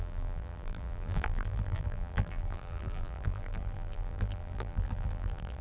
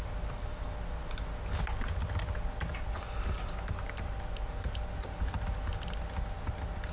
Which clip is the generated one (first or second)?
first